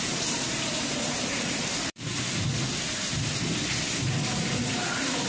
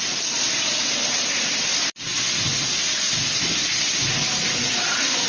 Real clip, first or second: second